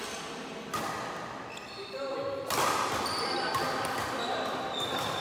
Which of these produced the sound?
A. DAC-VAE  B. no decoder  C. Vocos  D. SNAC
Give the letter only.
B